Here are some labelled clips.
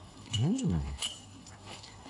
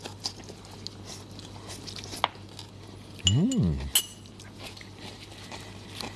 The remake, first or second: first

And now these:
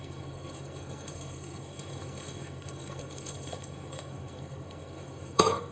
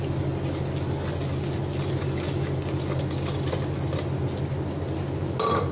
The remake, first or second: first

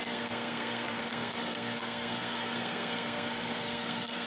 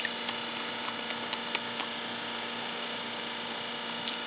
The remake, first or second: first